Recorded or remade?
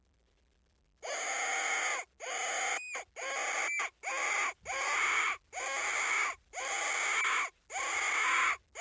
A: recorded